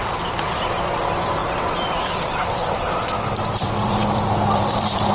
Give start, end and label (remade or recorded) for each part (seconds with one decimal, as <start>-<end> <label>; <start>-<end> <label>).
0.0-5.1 remade